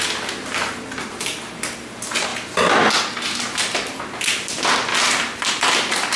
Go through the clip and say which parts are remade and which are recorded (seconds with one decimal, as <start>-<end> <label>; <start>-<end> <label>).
0.0-3.6 recorded; 3.6-4.2 remade; 4.2-4.9 recorded; 4.9-6.2 remade